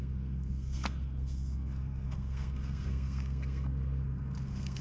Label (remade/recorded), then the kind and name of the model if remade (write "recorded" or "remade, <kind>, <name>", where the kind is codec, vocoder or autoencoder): remade, codec, SNAC